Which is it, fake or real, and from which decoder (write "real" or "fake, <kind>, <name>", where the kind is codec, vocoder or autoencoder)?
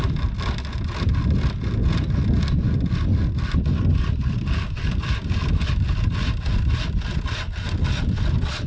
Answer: real